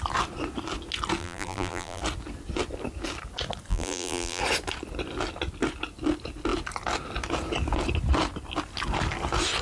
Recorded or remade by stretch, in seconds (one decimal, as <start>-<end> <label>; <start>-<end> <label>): 0.0-1.2 recorded; 1.2-2.0 remade; 2.0-3.7 recorded; 3.7-4.4 remade; 4.4-9.6 recorded